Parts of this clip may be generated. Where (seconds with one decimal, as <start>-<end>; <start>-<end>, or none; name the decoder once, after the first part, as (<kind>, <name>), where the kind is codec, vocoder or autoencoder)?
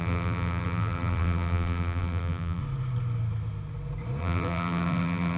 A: 0.0-2.6 (vocoder, BigVGAN v2); 4.2-5.4